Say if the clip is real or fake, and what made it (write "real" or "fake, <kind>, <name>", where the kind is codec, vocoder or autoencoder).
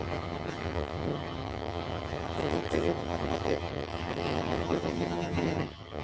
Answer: fake, vocoder, HiFi-GAN